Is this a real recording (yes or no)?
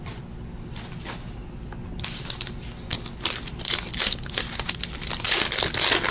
yes